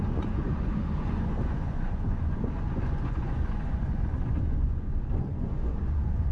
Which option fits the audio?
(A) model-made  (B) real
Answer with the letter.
A